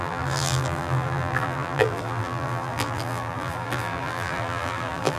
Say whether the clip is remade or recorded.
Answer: remade